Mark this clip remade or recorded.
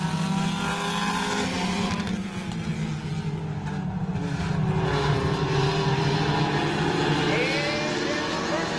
recorded